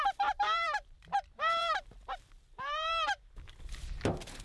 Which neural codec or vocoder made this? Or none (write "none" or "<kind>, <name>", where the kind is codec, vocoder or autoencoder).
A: vocoder, BigVGAN v2